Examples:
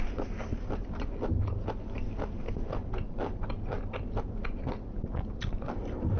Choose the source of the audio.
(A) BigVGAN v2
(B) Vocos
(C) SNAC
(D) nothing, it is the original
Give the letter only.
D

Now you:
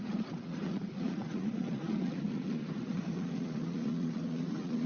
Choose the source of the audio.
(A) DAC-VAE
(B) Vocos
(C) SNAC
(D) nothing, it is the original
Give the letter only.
B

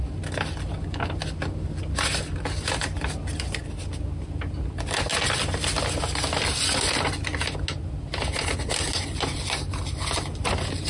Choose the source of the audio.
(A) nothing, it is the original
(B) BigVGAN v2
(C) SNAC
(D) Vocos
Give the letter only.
A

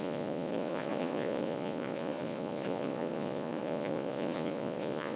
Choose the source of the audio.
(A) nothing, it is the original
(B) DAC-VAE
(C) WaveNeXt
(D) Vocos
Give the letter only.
D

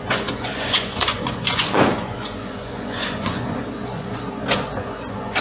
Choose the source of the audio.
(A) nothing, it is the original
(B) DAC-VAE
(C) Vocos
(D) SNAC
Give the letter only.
C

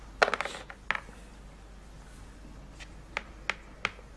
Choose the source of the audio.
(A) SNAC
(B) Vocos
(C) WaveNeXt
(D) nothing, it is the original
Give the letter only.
D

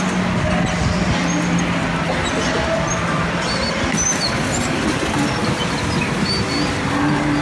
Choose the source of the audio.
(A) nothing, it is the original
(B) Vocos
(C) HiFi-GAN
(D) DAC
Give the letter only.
A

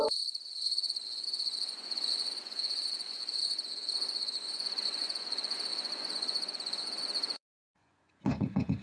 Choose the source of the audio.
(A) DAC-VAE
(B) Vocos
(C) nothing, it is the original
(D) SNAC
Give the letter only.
B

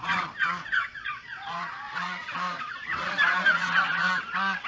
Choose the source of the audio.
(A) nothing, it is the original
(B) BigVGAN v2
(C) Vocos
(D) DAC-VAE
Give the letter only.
C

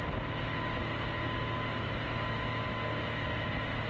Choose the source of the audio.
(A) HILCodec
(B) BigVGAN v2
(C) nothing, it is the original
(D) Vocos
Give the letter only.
C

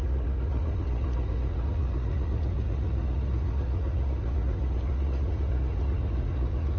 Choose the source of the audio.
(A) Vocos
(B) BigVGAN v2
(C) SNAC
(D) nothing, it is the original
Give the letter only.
A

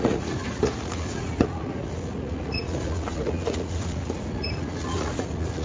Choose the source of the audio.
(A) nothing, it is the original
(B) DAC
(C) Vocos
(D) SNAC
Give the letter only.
C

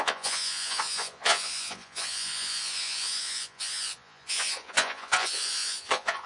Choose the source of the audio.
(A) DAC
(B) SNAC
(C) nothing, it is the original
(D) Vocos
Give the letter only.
D